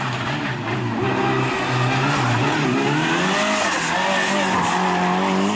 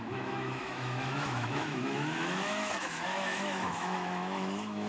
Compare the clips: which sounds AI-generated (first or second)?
second